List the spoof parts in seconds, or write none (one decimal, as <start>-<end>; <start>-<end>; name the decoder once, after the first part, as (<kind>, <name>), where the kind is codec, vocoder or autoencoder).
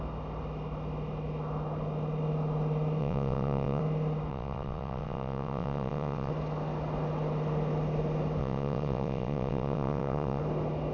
3.0-3.8 (vocoder, WaveNeXt); 4.3-6.3; 8.4-10.4